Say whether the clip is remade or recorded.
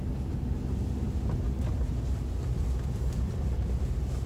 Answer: recorded